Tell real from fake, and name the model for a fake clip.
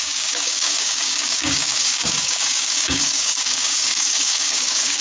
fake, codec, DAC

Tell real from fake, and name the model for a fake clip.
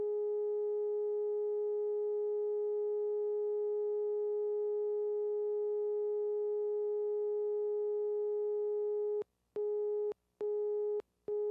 real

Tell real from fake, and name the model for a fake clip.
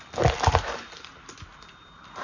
real